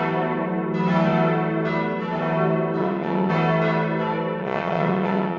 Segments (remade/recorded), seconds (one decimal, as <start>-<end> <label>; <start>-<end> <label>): 0.0-2.8 recorded; 2.8-3.3 remade; 3.3-4.4 recorded; 4.4-5.4 remade